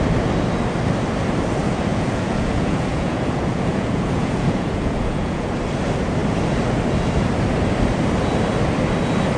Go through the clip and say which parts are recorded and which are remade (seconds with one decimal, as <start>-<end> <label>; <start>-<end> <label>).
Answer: 0.0-1.9 recorded; 1.9-5.5 remade; 5.5-9.4 recorded